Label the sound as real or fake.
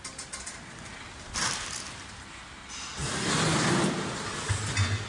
real